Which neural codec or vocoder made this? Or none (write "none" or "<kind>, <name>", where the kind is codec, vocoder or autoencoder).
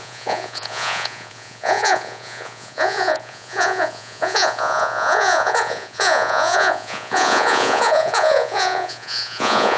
vocoder, Vocos